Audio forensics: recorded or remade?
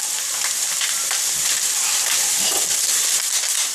recorded